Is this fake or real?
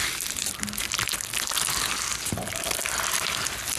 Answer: real